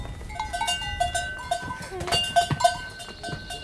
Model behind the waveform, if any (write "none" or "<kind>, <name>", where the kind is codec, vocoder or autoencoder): none